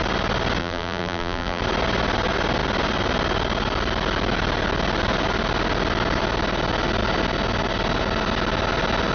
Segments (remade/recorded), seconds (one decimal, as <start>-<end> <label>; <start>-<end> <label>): 0.0-0.6 recorded; 0.6-1.6 remade; 1.6-9.1 recorded